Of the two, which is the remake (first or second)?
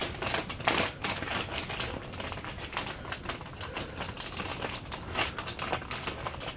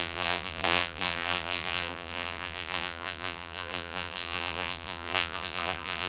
second